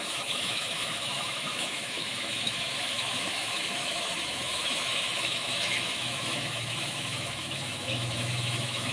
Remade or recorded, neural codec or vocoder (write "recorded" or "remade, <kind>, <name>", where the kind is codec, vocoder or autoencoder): remade, autoencoder, DAC-VAE